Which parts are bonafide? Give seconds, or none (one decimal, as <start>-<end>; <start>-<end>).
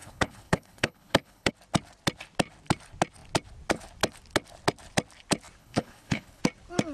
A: 1.5-5.6; 6.4-6.9